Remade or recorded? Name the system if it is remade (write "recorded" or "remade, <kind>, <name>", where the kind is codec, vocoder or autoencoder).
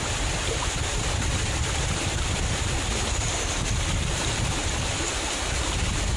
recorded